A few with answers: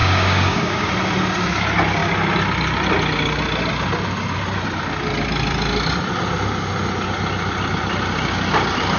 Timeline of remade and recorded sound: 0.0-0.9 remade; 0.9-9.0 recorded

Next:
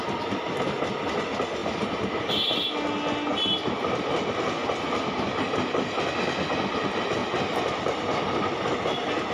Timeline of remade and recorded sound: 0.0-1.6 recorded; 1.6-2.2 remade; 2.2-3.3 recorded; 3.3-3.8 remade; 3.8-7.2 recorded; 7.2-8.4 remade; 8.4-9.3 recorded

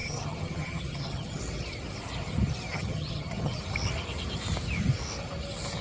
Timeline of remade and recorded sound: 0.0-1.4 remade; 1.4-2.7 recorded; 2.7-3.6 remade; 3.6-5.8 recorded